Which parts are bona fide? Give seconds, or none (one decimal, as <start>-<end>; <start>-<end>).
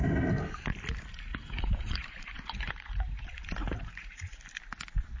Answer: 0.0-1.3; 4.4-5.2